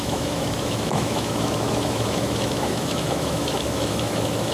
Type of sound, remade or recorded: remade